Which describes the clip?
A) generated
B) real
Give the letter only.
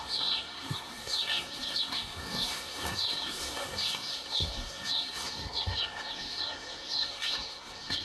A